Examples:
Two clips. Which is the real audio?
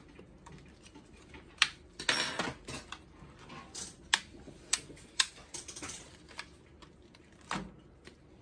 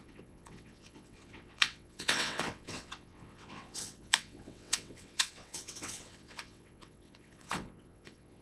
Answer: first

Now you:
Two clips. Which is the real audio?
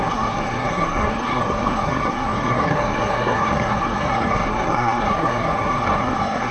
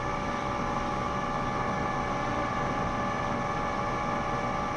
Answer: second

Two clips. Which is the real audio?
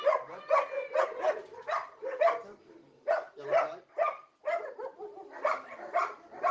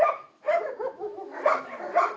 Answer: first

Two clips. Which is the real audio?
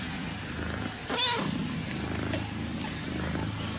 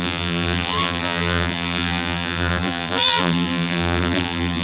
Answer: first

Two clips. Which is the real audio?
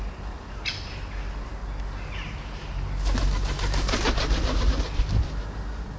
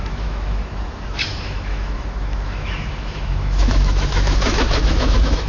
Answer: first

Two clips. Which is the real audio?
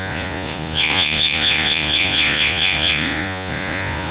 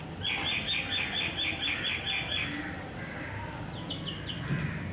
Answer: second